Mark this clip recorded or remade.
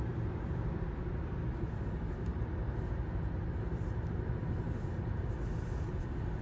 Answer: recorded